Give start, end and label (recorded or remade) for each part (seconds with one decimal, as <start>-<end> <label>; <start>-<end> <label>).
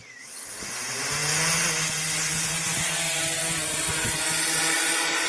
0.0-5.3 recorded